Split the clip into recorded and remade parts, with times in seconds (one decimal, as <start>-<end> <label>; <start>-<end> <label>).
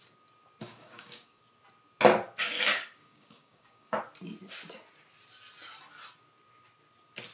0.0-0.6 recorded; 0.6-1.4 remade; 1.4-2.4 recorded; 2.4-4.0 remade; 4.0-7.3 recorded